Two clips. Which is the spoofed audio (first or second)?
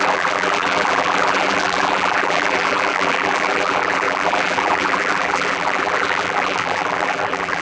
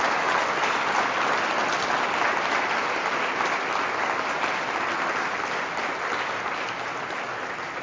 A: first